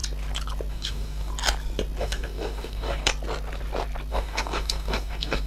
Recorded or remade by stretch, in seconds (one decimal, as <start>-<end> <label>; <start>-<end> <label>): 0.0-0.7 recorded; 0.7-1.3 remade; 1.3-2.0 recorded; 2.0-3.1 remade; 3.1-4.1 recorded; 4.1-5.5 remade